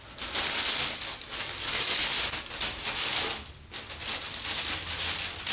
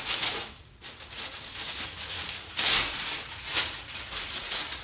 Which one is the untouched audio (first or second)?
first